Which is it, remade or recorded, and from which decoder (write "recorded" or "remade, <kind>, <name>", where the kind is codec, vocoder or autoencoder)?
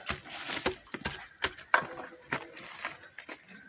remade, vocoder, BigVGAN v2